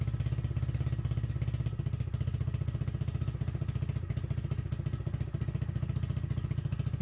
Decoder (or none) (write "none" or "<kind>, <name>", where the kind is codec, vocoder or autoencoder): none